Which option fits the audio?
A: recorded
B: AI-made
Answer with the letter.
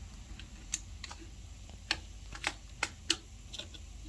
A